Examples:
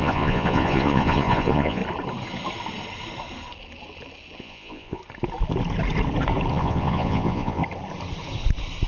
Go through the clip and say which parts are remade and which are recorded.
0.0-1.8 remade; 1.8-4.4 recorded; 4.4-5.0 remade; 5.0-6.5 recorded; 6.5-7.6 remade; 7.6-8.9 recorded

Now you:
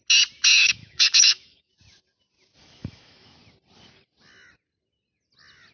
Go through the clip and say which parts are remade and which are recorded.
0.0-0.5 recorded; 0.5-1.7 remade; 1.7-2.6 recorded; 2.6-3.4 remade; 3.4-5.7 recorded